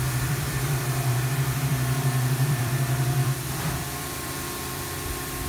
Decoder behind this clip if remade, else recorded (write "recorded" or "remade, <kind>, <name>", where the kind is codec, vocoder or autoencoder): remade, vocoder, BigVGAN v2